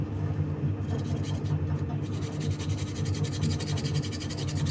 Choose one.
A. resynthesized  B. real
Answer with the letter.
B